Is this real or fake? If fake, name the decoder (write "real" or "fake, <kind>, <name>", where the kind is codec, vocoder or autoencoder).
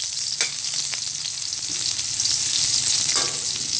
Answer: real